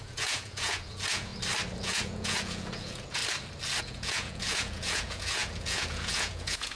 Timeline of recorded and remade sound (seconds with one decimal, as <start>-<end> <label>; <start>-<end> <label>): 0.0-1.3 remade; 1.3-1.8 recorded; 1.8-3.2 remade; 3.2-3.8 recorded; 3.8-6.8 remade

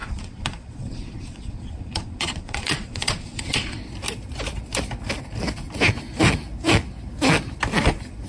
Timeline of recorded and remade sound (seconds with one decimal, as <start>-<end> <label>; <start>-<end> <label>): 0.0-3.8 remade; 3.8-8.3 recorded

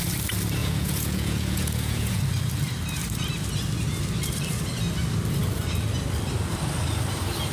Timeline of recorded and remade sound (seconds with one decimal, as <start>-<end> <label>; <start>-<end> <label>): 0.0-0.6 recorded; 0.6-2.2 remade; 2.2-7.5 recorded

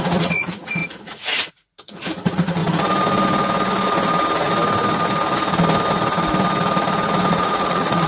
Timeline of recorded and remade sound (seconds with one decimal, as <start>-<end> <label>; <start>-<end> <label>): 0.0-2.6 remade; 2.6-7.3 recorded; 7.3-8.1 remade

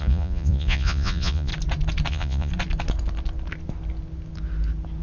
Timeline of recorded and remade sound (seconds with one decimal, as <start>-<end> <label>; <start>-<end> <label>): 0.0-1.5 remade; 1.5-2.1 recorded; 2.1-2.5 remade; 2.5-5.0 recorded

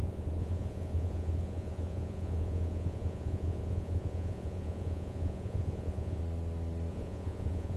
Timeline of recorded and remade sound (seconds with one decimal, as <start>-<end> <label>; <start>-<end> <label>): 0.0-6.2 remade; 6.2-6.9 recorded; 6.9-7.8 remade